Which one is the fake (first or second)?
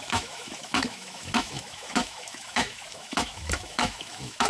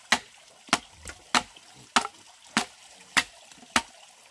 first